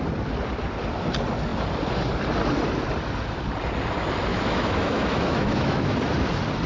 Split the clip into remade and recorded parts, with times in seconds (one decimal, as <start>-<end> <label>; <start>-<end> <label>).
0.0-4.3 recorded; 4.3-5.9 remade; 5.9-6.7 recorded